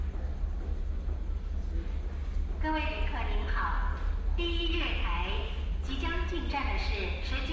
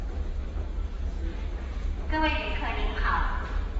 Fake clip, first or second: second